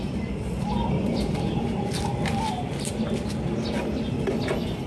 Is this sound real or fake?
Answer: real